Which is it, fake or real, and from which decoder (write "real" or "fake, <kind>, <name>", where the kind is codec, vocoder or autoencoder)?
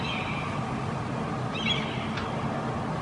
real